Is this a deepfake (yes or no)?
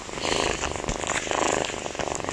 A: no